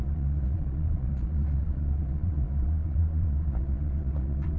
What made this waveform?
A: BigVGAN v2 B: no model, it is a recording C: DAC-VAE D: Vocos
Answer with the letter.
D